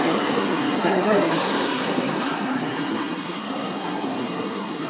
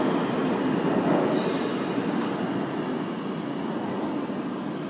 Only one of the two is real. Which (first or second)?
second